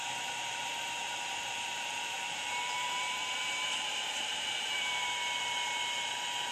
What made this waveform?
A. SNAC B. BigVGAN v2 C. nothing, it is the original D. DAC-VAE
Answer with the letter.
B